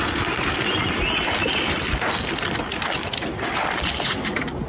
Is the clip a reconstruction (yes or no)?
no